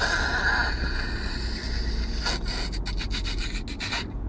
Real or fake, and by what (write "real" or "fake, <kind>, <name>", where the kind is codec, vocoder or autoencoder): real